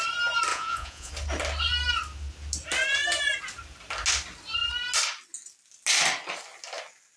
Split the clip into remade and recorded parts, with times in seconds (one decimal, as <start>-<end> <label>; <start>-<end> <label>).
0.0-0.5 recorded; 0.5-1.1 remade; 1.1-7.2 recorded